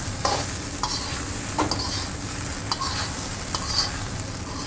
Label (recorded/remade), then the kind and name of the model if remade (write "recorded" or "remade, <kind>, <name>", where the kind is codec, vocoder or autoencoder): recorded